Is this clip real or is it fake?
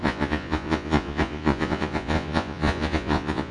fake